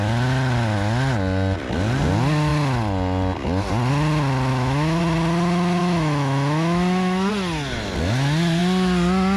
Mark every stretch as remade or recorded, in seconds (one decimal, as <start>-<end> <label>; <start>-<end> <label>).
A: 0.0-4.5 recorded; 4.5-5.0 remade; 5.0-5.8 recorded; 5.8-7.3 remade; 7.3-9.4 recorded